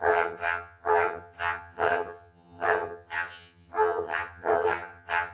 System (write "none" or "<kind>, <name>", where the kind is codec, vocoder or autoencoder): vocoder, HiFi-GAN